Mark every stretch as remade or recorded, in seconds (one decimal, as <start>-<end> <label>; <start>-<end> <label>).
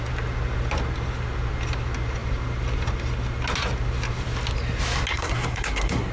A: 0.0-5.1 recorded; 5.1-6.1 remade